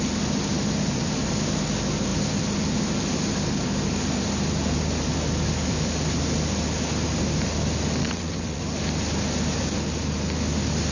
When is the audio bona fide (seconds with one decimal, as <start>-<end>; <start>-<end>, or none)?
0.0-8.0; 8.6-10.9